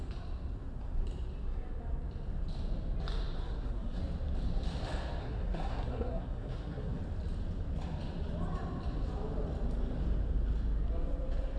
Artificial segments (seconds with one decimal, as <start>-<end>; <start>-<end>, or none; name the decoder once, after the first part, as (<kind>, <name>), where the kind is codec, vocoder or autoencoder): 3.4-4.0 (codec, SNAC); 5.2-7.0